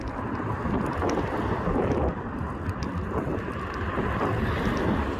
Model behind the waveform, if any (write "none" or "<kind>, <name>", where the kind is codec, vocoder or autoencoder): none